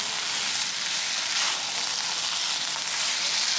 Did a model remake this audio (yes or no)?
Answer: no